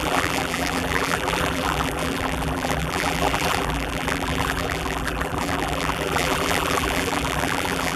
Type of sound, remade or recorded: remade